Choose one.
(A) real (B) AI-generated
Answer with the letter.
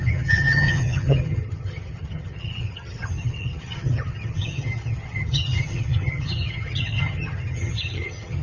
B